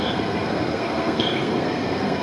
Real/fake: fake